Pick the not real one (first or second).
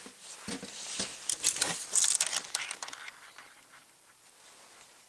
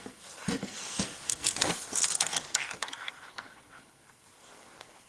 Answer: second